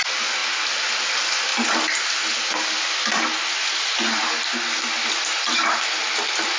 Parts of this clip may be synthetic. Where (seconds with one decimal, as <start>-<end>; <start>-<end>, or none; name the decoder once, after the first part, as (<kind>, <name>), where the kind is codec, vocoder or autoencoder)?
0.0-6.6 (vocoder, BigVGAN v2)

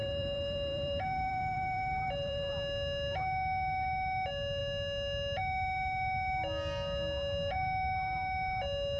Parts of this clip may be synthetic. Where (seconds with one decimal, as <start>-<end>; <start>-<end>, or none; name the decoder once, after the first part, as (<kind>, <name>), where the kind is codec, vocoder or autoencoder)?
0.0-2.5 (vocoder, BigVGAN v2)